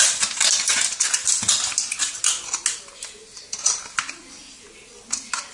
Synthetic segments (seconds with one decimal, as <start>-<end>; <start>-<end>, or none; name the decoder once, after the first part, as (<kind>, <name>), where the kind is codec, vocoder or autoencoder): 0.4-1.3 (vocoder, BigVGAN v2); 3.2-3.8